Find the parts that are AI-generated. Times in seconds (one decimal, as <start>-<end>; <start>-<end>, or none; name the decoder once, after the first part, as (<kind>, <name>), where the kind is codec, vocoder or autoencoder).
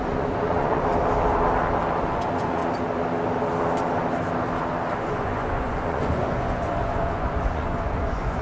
0.0-0.9 (vocoder, Vocos); 2.0-2.6; 5.0-8.4